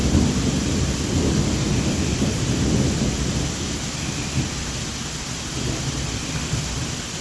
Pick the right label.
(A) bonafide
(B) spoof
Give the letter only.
A